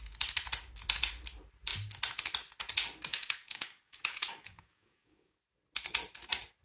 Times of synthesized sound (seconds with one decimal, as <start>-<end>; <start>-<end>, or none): 3.1-5.4